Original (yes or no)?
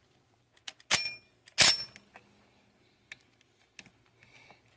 yes